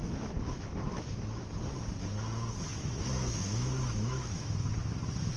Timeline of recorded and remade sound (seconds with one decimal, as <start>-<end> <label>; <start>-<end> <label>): 0.0-1.4 remade; 1.4-2.7 recorded; 2.7-4.7 remade; 4.7-5.4 recorded

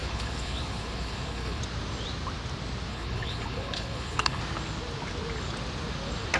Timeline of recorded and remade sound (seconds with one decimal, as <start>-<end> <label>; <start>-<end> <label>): 0.0-1.6 remade; 1.6-2.9 recorded; 2.9-4.4 remade; 4.4-6.4 recorded

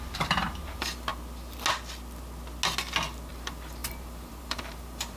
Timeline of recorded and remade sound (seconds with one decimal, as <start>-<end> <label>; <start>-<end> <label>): 0.0-1.1 remade; 1.1-3.3 recorded; 3.3-5.2 remade

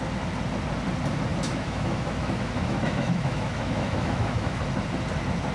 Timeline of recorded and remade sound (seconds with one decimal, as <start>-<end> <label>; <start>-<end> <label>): 0.0-1.3 recorded; 1.3-4.6 remade; 4.6-5.5 recorded

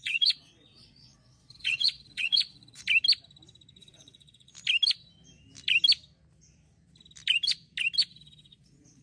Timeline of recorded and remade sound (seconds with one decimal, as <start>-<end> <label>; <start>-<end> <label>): 0.0-2.8 remade; 2.8-3.8 recorded; 3.8-4.5 remade; 4.5-8.1 recorded; 8.1-9.0 remade